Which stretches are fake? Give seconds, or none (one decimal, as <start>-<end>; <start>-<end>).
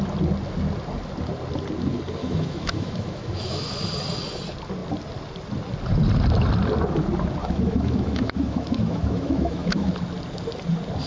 2.2-3.7; 7.4-9.9